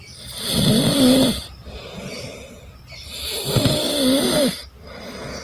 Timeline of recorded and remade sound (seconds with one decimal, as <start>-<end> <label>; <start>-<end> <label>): 0.0-1.2 recorded; 1.2-3.7 remade; 3.7-5.4 recorded